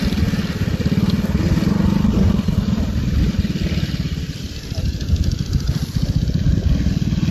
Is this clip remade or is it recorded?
recorded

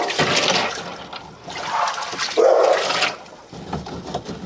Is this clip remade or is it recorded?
recorded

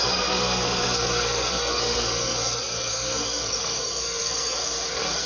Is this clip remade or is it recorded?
remade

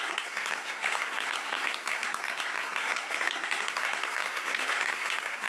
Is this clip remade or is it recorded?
remade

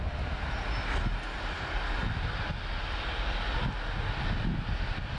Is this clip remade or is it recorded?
recorded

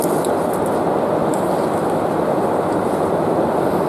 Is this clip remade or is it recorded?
recorded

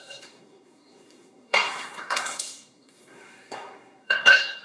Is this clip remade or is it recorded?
remade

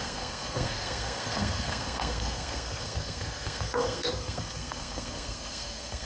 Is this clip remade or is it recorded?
remade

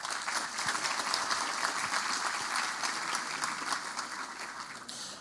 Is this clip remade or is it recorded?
recorded